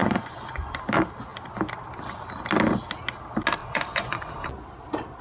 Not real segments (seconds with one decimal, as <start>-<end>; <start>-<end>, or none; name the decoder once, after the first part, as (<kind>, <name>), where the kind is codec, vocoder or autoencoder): 0.0-0.7 (vocoder, Vocos); 3.6-4.3